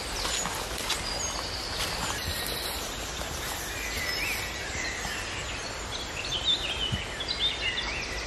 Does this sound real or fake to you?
real